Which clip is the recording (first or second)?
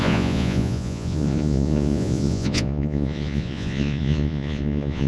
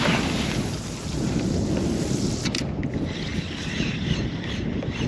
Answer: second